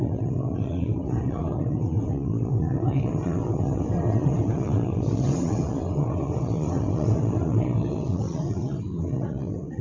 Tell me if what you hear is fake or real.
fake